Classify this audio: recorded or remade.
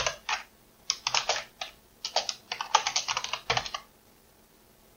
recorded